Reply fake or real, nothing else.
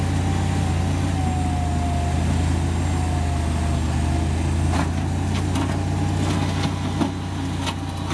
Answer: real